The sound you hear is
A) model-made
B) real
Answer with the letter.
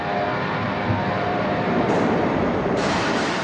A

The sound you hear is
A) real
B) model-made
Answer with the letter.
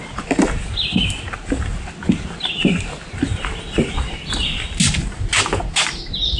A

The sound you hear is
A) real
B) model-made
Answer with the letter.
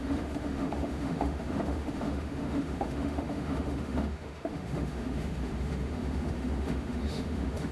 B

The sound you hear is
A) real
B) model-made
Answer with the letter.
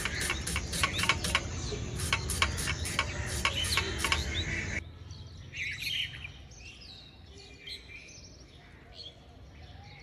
A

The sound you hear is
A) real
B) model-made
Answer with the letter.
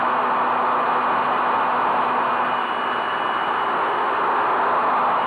A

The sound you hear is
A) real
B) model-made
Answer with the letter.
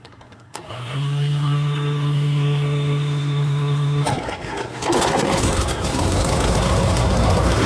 B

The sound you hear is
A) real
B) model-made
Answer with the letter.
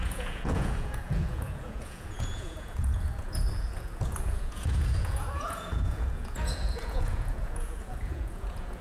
B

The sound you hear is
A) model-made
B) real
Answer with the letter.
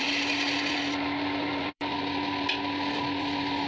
A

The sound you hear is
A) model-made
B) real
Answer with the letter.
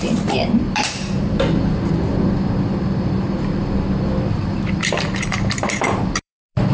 A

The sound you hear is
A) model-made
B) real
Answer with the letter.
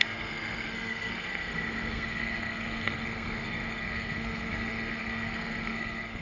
A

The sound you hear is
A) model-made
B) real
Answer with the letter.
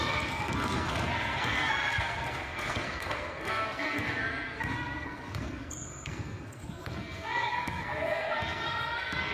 A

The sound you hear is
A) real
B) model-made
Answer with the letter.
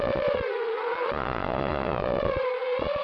B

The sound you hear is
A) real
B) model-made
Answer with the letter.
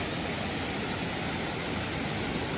A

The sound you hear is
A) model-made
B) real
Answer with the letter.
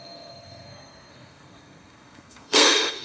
A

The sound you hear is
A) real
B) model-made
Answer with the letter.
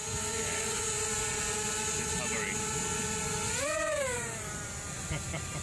A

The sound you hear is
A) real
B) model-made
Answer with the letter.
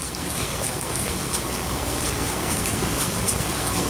B